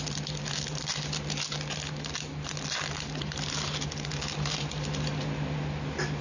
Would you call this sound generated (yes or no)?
no